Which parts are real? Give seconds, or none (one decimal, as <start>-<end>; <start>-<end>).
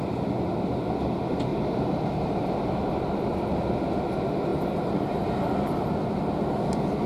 0.0-1.5; 2.5-4.5; 5.3-7.1